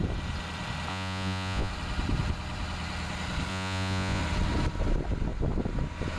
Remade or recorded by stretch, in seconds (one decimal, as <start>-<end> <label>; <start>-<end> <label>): 0.0-0.9 recorded; 0.9-1.7 remade; 1.7-3.5 recorded; 3.5-4.2 remade; 4.2-6.2 recorded